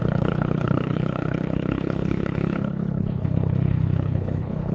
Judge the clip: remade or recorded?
remade